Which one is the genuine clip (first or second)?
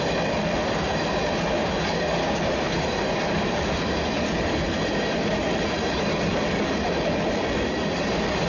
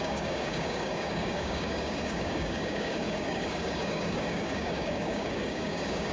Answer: first